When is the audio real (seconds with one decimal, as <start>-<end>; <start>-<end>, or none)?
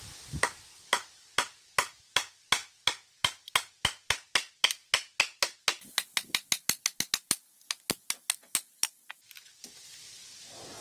0.0-10.8